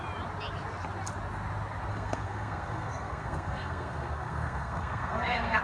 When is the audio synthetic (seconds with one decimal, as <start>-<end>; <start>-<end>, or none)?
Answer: 1.9-5.6